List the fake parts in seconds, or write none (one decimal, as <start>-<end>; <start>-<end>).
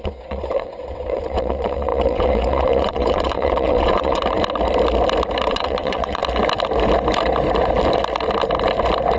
0.0-4.2; 5.5-6.2